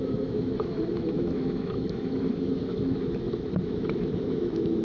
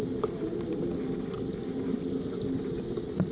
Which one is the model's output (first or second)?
first